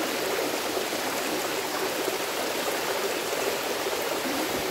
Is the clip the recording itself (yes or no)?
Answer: yes